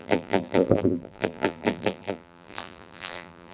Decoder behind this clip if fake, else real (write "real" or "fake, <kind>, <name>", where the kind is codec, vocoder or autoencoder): fake, vocoder, BigVGAN v2